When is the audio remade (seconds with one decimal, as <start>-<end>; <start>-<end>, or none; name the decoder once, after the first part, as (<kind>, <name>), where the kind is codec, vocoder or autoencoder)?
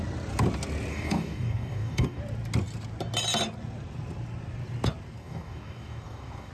0.9-2.2 (codec, DAC); 5.2-6.5